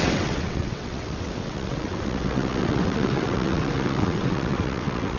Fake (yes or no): yes